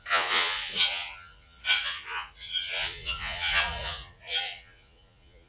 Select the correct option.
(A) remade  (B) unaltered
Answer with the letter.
A